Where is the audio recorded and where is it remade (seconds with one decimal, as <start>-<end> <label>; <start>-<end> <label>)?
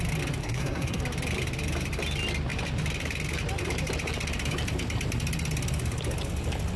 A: 0.0-0.4 recorded; 0.4-1.0 remade; 1.0-6.8 recorded